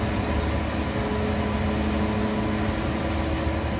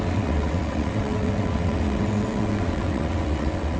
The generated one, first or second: second